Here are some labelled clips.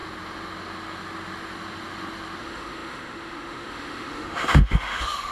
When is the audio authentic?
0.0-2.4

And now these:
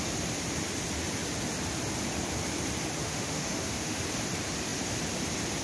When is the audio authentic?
0.0-3.0; 4.0-5.6

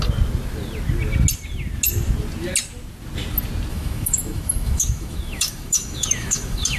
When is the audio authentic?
0.0-3.7